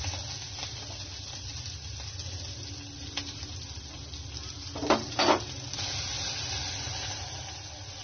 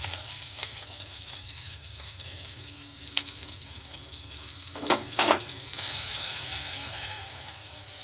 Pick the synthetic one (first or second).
second